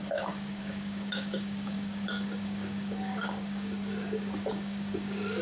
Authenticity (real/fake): fake